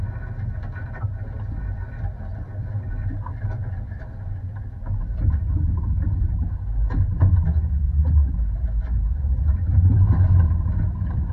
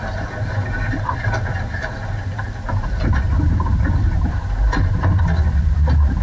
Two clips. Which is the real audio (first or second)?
first